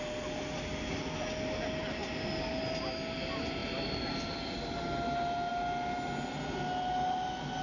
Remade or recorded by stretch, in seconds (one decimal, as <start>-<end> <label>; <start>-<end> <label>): 0.0-7.6 recorded